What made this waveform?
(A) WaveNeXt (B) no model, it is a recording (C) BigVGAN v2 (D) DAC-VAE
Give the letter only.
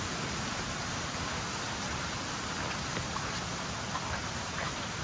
B